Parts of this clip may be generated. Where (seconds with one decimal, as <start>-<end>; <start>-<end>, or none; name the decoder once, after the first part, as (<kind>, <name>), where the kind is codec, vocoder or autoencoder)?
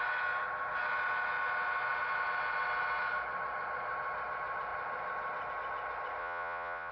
6.2-6.9 (vocoder, Vocos)